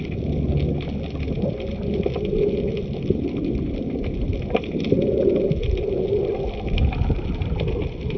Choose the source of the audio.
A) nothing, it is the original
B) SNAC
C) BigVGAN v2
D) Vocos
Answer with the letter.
A